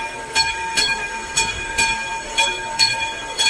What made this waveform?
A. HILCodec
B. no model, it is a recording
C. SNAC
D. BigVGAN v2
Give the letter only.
C